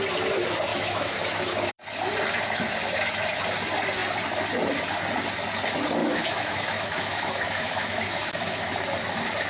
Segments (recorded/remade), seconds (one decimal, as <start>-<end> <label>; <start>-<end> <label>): 0.0-0.7 recorded; 0.7-1.7 remade; 1.7-6.0 recorded; 6.0-8.7 remade; 8.7-9.5 recorded